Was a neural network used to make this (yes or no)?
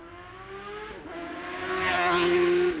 no